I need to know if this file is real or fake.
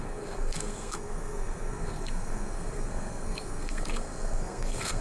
fake